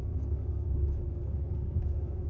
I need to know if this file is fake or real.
fake